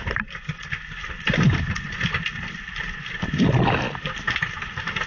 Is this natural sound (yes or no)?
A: yes